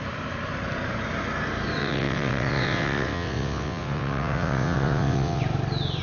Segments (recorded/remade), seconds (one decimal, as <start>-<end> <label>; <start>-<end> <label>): 0.0-1.8 recorded; 1.8-5.4 remade; 5.4-6.0 recorded